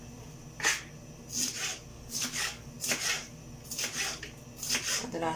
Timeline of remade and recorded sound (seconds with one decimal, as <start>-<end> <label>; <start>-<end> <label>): 0.0-1.9 recorded; 1.9-2.7 remade; 2.7-5.4 recorded